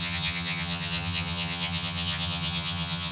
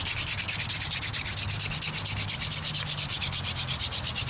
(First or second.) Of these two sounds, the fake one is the first